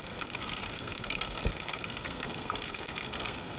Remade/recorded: remade